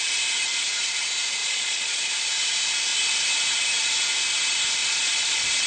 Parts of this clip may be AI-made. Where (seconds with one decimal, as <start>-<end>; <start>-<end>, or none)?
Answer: 1.4-2.3; 4.8-5.7